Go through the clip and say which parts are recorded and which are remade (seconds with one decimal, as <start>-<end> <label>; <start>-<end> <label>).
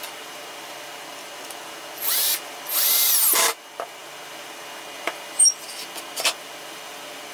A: 0.0-7.3 recorded